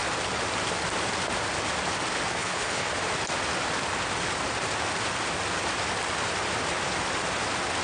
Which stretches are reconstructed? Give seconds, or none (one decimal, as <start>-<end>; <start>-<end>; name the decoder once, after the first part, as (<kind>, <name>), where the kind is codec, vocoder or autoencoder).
2.4-2.9 (codec, HILCodec)